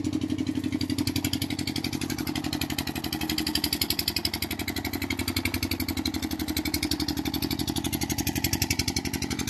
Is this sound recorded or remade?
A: recorded